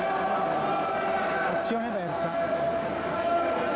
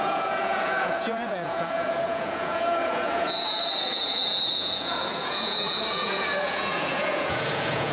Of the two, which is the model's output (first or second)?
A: second